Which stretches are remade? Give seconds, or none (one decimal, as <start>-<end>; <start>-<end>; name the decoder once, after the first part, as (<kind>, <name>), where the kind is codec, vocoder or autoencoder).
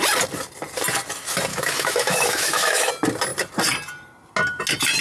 1.5-2.9 (autoencoder, DAC-VAE)